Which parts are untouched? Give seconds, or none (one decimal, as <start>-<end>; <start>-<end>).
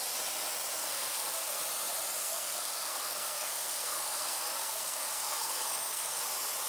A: 0.0-0.8; 1.6-2.2; 6.2-6.7